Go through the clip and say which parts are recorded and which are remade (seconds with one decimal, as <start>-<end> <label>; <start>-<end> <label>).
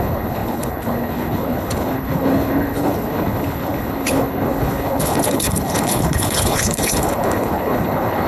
0.0-8.3 remade